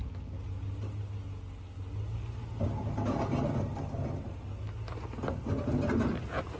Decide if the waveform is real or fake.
real